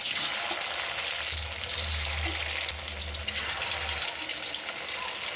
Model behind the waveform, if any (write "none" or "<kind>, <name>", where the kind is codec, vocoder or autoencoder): none